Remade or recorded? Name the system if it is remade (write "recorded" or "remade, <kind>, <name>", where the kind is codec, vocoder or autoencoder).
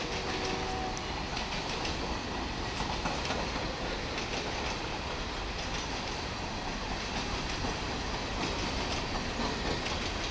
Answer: recorded